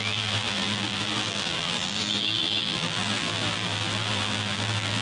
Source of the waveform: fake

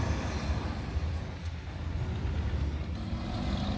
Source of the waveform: real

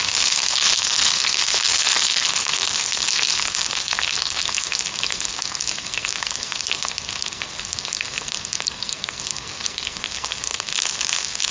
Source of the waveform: fake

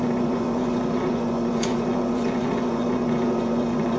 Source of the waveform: fake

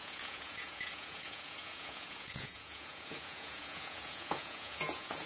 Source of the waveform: fake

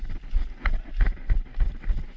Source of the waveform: real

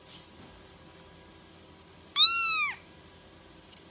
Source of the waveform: real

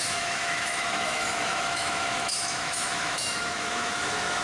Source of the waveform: fake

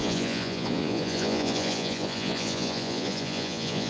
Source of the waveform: fake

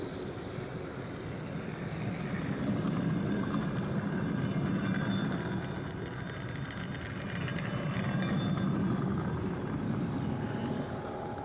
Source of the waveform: real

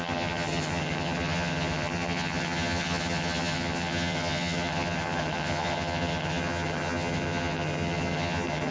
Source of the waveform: fake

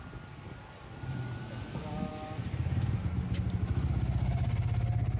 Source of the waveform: real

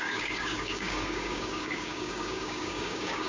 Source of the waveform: fake